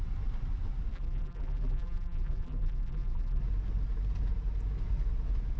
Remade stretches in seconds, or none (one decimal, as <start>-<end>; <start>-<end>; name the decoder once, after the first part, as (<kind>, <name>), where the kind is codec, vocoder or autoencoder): 0.9-3.4 (vocoder, BigVGAN v2)